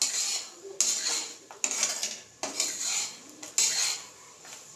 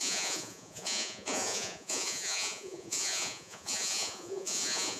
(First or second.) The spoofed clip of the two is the second